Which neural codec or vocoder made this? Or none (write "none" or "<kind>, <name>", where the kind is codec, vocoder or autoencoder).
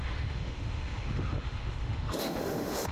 autoencoder, DAC-VAE